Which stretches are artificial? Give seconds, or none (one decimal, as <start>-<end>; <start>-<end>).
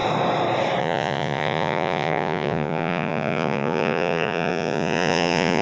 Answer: 0.8-5.6